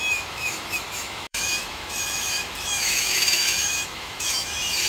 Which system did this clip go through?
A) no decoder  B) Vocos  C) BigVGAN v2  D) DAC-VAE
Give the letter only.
D